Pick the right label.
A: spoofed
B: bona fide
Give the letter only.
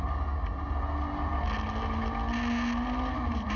B